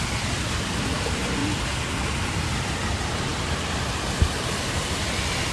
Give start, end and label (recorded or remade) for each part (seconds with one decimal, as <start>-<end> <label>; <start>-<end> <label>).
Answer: 0.0-5.5 recorded